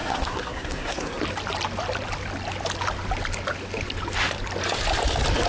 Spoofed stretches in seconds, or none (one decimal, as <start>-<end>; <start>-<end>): 0.0-1.2